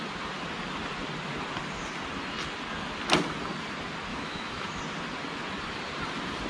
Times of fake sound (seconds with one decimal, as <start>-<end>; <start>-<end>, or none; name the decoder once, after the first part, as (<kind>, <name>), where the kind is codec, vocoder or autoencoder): 4.1-4.8 (autoencoder, DAC-VAE)